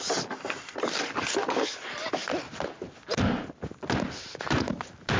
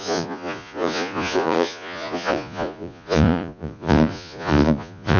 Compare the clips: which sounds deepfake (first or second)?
second